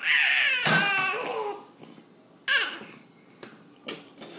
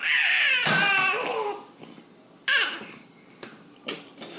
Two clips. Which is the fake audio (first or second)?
second